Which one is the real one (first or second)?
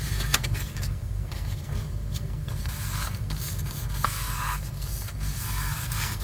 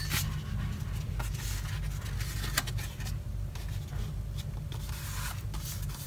second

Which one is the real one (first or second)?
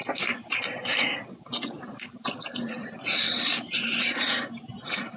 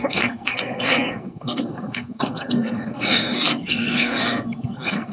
first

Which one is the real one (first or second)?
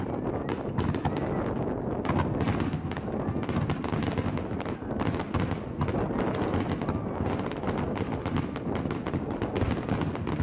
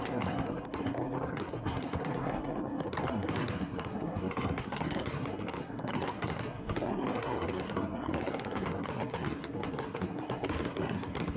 first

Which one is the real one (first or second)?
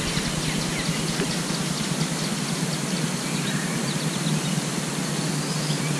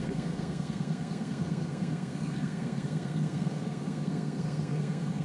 first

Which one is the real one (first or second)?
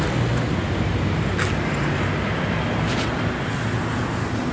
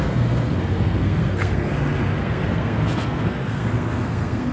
first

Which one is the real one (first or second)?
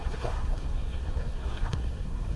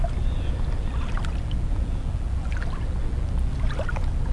second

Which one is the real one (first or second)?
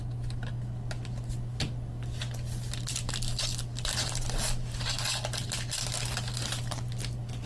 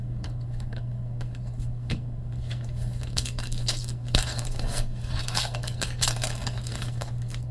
first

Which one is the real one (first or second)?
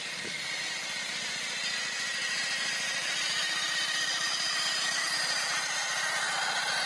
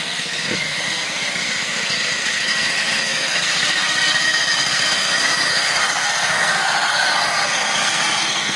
first